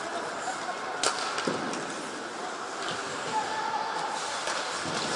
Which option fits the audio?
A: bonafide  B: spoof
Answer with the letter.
A